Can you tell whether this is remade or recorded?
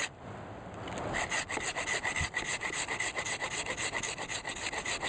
recorded